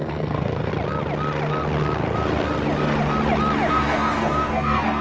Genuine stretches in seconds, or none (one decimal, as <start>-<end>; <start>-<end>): 0.7-3.7